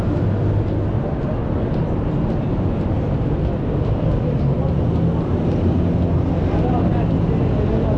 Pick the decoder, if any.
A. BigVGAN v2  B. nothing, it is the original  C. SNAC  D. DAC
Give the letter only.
B